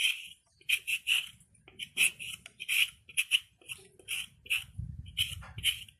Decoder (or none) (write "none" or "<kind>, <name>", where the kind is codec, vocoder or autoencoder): none